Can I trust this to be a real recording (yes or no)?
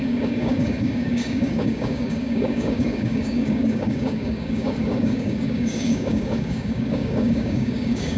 no